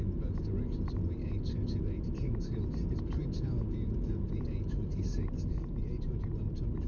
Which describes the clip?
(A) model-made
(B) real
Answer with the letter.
B